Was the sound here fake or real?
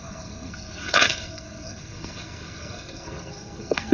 fake